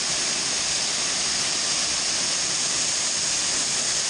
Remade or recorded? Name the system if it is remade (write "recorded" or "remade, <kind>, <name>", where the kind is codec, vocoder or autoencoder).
recorded